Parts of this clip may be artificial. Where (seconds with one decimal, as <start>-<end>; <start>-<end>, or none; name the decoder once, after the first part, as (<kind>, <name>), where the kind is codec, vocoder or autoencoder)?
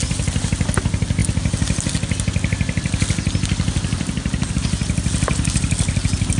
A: none